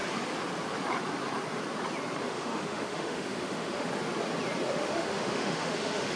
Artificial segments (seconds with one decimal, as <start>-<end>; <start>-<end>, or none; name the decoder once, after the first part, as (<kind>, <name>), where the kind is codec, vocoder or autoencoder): 2.2-3.9 (autoencoder, DAC-VAE); 4.7-6.2